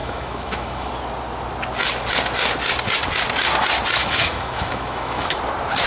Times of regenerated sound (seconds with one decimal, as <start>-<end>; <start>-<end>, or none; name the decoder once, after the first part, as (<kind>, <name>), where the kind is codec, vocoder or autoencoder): 0.0-0.9 (autoencoder, DAC-VAE); 4.0-5.4